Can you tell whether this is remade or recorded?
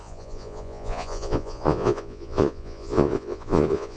remade